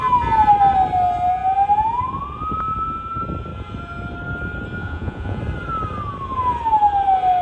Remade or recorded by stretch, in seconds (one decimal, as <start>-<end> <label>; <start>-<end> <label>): 0.0-4.8 recorded; 4.8-5.4 remade; 5.4-7.4 recorded

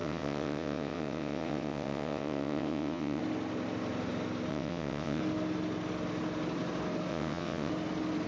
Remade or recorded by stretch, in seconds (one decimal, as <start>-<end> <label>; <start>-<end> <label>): 0.0-3.2 remade; 3.2-4.5 recorded; 4.5-5.2 remade; 5.2-7.1 recorded; 7.1-7.7 remade; 7.7-8.3 recorded

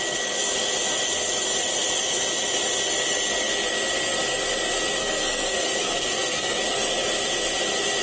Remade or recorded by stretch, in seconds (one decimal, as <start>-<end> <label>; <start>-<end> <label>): 0.0-5.0 recorded; 5.0-6.6 remade; 6.6-8.0 recorded